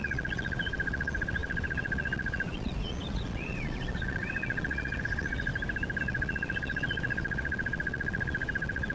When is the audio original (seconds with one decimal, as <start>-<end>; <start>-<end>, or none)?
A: 5.5-6.0